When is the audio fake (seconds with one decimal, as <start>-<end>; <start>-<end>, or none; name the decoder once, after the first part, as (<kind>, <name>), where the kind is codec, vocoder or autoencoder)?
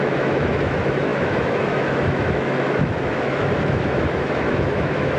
0.0-5.2 (autoencoder, DAC-VAE)